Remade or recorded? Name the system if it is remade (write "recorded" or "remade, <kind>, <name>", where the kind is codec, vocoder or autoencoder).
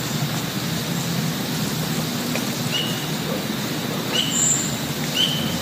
recorded